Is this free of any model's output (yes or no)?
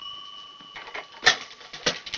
yes